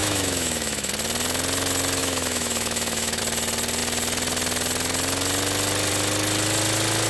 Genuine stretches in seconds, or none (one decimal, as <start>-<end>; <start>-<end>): 0.9-2.0; 3.2-7.1